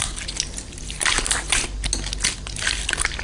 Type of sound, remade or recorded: recorded